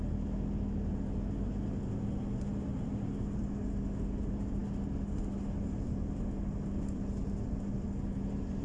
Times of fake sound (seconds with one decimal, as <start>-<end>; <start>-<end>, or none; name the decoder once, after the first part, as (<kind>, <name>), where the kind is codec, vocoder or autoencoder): none

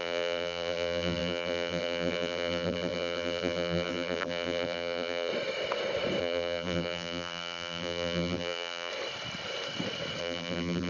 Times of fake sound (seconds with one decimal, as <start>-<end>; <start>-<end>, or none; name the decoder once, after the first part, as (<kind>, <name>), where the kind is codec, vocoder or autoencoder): 0.0-5.3 (vocoder, BigVGAN v2); 6.2-8.9; 10.2-10.9